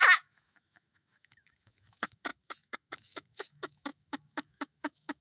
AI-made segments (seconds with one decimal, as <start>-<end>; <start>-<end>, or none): 0.0-5.2